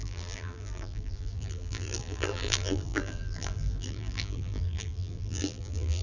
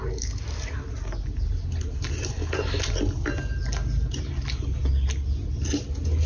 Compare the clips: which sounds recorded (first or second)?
second